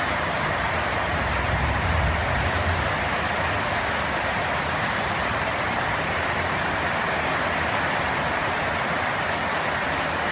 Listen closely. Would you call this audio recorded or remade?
remade